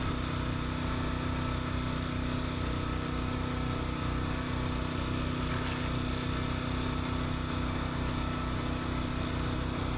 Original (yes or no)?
yes